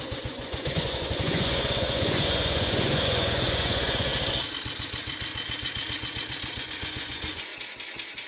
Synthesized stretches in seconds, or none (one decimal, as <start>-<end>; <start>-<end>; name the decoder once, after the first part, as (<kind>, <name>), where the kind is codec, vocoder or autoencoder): 0.0-4.1 (vocoder, Vocos); 6.6-7.5

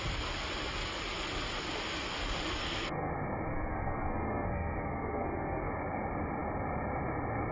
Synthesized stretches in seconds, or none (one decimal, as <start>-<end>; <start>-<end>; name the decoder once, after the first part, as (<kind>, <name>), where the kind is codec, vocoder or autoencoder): 2.6-3.1 (codec, SNAC); 3.5-5.7